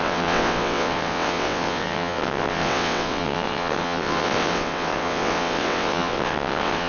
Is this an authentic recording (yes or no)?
no